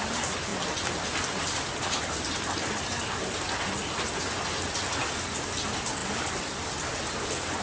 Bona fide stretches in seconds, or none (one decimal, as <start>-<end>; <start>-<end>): 0.0-7.6